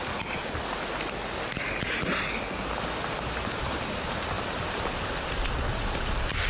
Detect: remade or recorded recorded